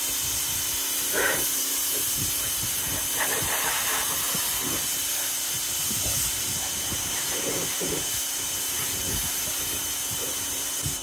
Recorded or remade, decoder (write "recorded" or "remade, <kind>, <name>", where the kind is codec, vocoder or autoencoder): remade, vocoder, BigVGAN v2